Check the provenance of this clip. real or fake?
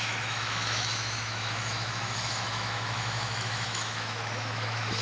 fake